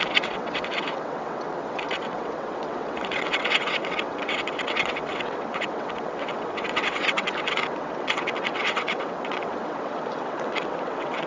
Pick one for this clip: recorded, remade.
remade